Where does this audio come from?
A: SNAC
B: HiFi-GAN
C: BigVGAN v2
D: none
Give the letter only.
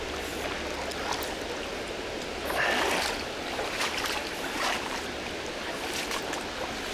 D